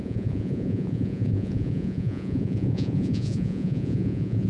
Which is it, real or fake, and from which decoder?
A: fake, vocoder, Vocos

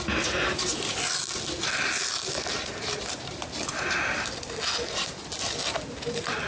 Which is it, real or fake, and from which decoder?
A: real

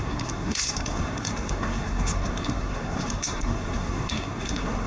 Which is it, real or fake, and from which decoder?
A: fake, codec, SNAC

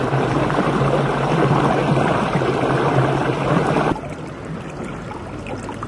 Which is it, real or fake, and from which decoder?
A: real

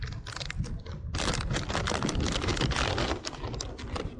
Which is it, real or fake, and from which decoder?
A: real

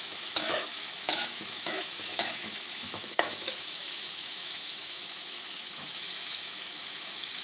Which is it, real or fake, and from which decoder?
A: fake, autoencoder, DAC-VAE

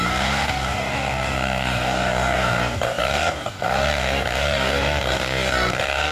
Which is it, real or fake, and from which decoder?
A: fake, codec, DAC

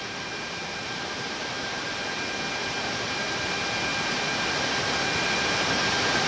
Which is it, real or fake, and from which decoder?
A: real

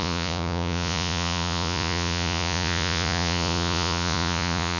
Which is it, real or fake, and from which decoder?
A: fake, vocoder, Vocos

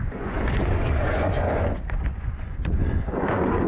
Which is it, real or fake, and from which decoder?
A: fake, vocoder, Vocos